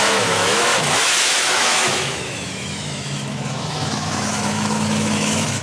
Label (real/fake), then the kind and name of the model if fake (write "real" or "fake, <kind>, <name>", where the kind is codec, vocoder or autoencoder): fake, autoencoder, DAC-VAE